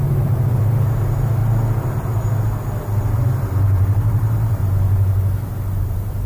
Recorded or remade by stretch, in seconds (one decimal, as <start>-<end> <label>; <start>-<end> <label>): 0.0-1.4 remade; 1.4-2.8 recorded; 2.8-4.6 remade; 4.6-5.8 recorded; 5.8-6.3 remade